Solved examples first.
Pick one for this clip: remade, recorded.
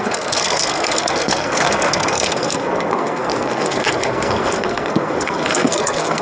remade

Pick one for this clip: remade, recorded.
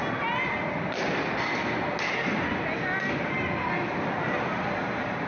recorded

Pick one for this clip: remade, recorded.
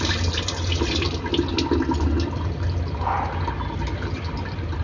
recorded